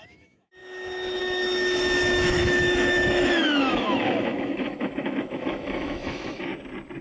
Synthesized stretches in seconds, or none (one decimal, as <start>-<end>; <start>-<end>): 0.0-0.6; 1.2-6.5